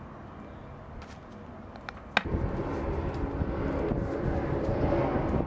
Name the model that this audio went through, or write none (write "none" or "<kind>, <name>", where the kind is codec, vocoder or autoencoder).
none